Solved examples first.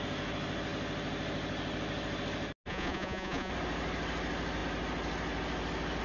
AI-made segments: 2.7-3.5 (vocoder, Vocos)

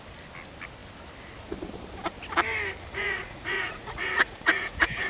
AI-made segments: 2.9-5.1 (vocoder, Vocos)

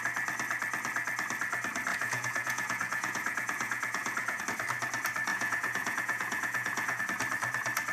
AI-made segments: 1.9-4.4 (vocoder, Vocos); 5.3-7.0

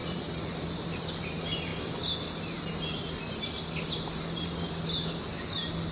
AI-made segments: 0.0-0.6 (vocoder, Vocos)

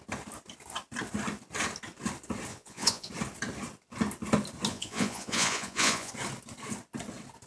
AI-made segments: 2.5-3.1 (vocoder, Vocos); 4.7-6.1

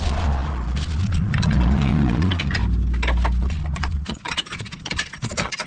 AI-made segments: 0.0-2.6 (vocoder, Vocos); 3.4-5.7

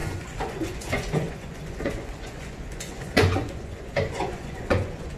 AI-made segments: 0.0-5.2 (vocoder, Vocos)

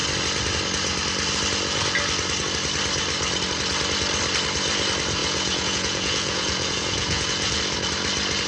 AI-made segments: 5.2-7.6 (vocoder, Vocos)